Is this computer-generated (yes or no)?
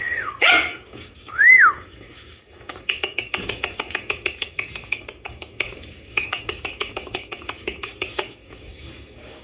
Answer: yes